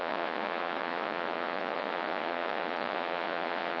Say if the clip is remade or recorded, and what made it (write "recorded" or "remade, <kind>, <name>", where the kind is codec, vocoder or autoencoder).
remade, vocoder, Vocos